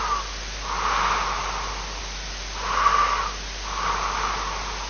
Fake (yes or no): no